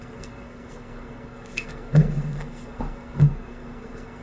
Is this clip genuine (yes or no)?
no